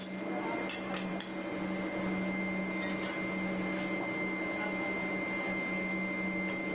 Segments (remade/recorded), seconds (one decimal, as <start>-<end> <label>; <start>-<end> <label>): 0.0-6.7 recorded